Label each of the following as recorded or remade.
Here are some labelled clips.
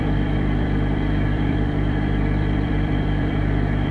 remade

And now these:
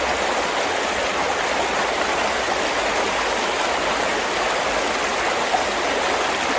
recorded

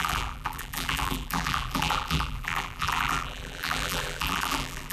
remade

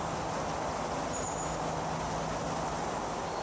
recorded